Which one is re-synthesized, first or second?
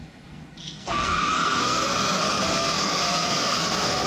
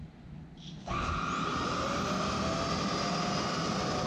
first